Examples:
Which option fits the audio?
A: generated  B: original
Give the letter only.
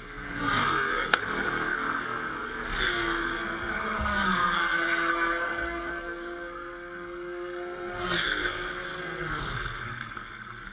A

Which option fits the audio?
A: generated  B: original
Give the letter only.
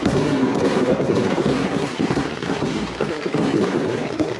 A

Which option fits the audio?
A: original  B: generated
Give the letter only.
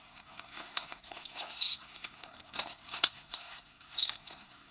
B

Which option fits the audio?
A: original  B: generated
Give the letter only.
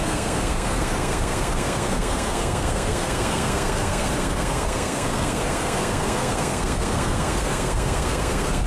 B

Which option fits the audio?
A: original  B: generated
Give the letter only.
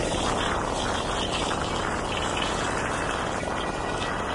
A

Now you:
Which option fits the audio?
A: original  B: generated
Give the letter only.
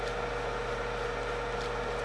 A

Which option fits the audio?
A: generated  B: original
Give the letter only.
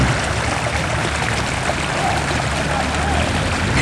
B